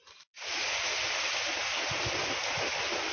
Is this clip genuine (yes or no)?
yes